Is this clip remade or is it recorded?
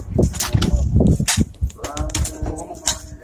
recorded